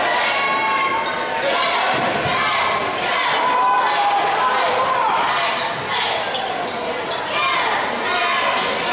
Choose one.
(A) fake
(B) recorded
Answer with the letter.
B